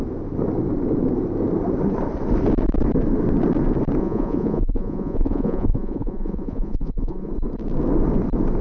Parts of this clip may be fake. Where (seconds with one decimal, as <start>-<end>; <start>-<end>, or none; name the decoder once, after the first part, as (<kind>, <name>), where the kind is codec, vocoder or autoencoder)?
4.0-7.3 (vocoder, Vocos)